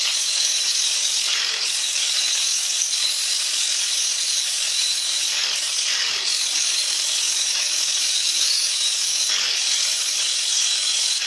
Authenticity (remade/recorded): remade